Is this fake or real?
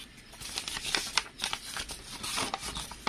real